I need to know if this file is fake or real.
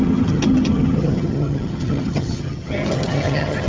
fake